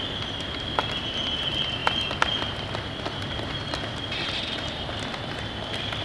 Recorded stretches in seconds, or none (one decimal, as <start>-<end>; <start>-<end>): 0.0-6.0